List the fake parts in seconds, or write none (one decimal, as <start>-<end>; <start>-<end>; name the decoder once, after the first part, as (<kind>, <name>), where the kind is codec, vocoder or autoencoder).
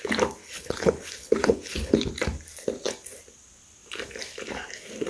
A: 0.4-2.1 (codec, HILCodec)